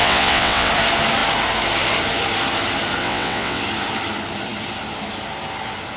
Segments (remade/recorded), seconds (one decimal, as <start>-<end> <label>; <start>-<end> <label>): 0.0-0.7 remade; 0.7-3.0 recorded; 3.0-3.6 remade; 3.6-6.0 recorded